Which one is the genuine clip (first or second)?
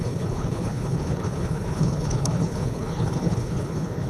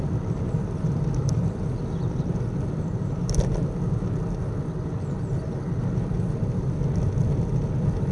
second